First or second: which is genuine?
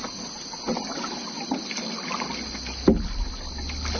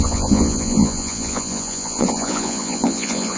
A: first